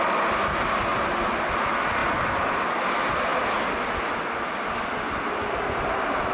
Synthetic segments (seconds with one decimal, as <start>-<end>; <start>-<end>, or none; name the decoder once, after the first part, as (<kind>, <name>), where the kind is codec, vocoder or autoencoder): none